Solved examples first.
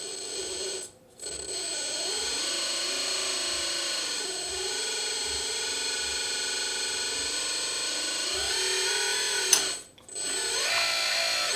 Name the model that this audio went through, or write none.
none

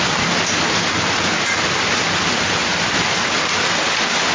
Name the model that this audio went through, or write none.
vocoder, BigVGAN v2